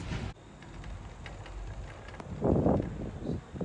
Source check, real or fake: real